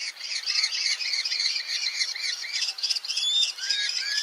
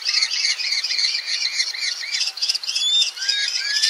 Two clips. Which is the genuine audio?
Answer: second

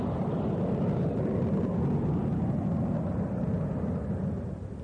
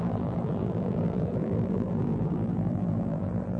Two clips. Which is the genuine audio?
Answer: first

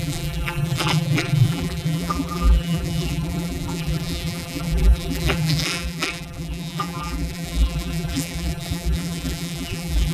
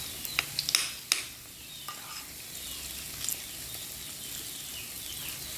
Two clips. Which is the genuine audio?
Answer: second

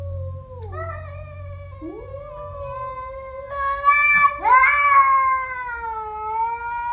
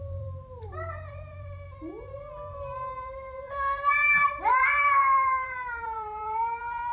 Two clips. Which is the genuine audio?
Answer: first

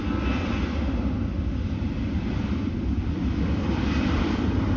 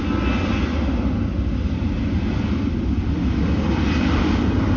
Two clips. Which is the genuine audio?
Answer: second